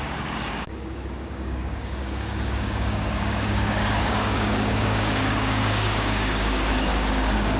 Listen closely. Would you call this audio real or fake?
fake